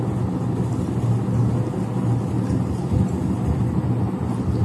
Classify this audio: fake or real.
real